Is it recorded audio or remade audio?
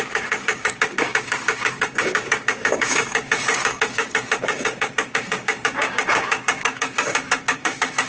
remade